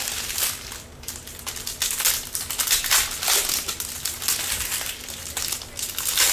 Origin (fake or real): real